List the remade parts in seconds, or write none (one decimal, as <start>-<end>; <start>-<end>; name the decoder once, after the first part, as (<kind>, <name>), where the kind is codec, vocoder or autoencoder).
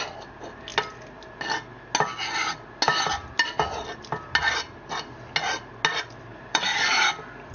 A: 6.3-7.0 (vocoder, BigVGAN v2)